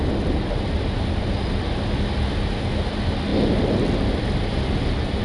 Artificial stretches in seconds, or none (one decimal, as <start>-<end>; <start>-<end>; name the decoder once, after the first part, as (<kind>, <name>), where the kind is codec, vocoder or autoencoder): none